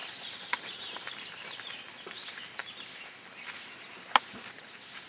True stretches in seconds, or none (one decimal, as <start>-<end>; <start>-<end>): 1.2-5.1